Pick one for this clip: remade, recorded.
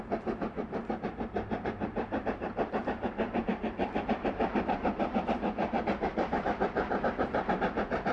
remade